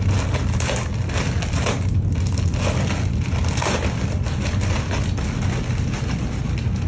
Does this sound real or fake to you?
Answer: real